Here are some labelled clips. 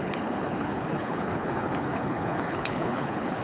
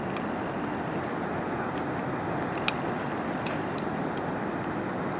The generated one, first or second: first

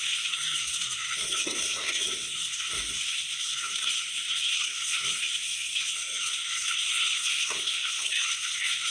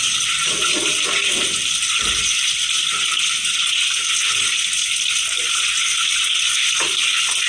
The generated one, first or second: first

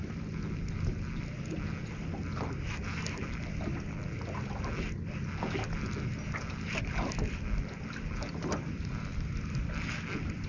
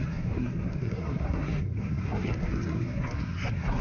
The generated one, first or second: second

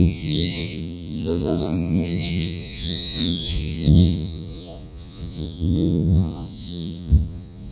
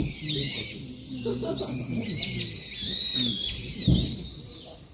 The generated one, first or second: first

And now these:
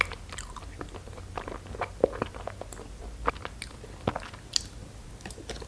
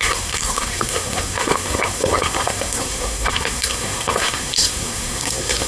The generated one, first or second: second